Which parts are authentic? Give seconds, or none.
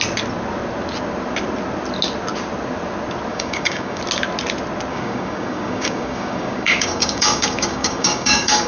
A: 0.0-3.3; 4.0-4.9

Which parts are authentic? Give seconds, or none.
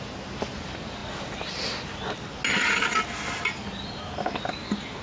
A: 0.0-5.0